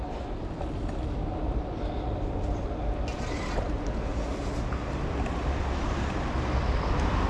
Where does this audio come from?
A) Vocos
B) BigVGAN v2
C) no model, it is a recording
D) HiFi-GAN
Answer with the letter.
C